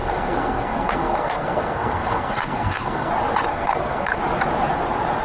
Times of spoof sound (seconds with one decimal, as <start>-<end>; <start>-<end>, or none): 0.0-3.1; 3.5-4.2

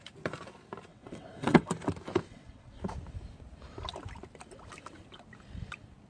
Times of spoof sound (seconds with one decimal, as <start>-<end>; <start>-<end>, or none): 0.9-1.7; 2.3-2.8

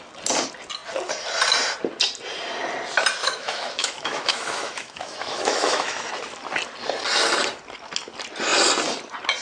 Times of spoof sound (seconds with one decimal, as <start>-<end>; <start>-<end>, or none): 3.2-6.1

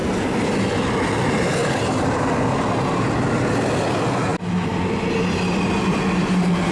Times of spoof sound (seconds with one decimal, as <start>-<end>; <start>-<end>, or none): none

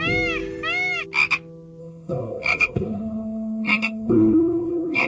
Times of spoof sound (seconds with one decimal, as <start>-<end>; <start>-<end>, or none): 1.8-5.1

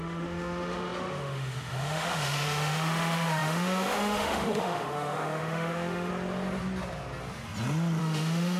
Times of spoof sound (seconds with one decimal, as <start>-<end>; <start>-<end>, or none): 0.0-6.1; 8.0-8.6

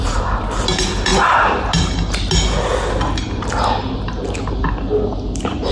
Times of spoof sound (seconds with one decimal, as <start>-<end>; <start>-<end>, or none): none

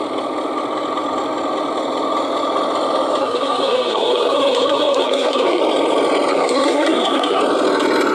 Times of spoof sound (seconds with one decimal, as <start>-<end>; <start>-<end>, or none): 3.2-5.6; 6.3-7.4